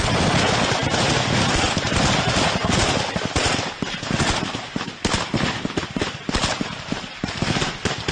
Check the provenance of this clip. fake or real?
real